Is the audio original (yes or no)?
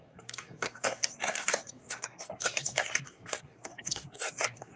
no